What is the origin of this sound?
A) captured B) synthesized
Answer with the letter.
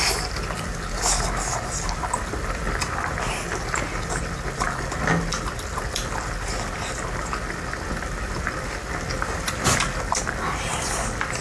A